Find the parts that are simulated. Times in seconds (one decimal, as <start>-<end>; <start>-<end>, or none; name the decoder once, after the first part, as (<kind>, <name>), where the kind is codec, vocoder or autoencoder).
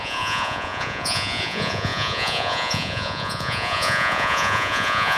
0.0-5.2 (vocoder, Vocos)